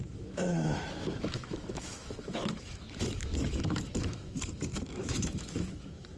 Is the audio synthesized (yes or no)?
yes